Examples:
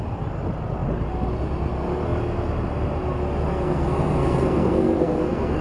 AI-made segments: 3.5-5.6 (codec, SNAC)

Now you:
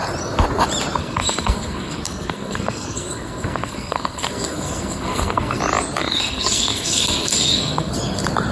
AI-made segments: 1.0-5.6 (codec, SNAC); 6.0-7.9

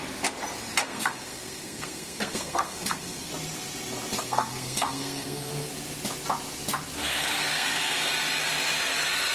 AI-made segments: 0.8-3.3 (codec, SNAC); 4.2-5.5; 7.0-8.0

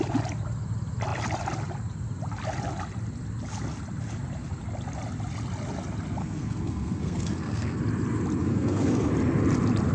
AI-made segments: 6.2-7.8 (codec, SNAC); 8.4-9.1

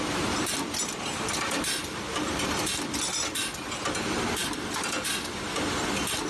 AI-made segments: none

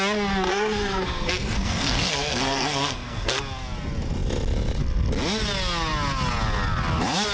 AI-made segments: 0.5-3.4 (codec, SNAC)

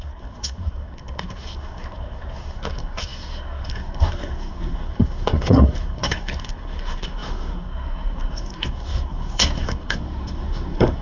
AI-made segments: 0.0-11.0 (codec, SNAC)

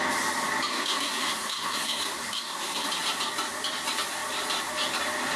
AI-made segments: 0.7-2.9 (codec, SNAC)